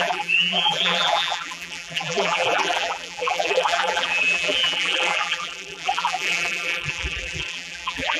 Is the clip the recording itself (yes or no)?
no